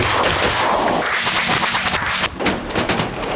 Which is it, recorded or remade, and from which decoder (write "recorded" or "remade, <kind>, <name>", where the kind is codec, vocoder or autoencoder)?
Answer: recorded